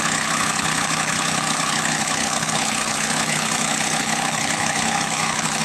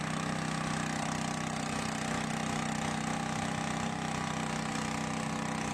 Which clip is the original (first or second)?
second